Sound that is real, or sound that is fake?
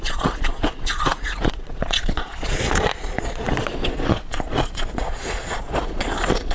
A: fake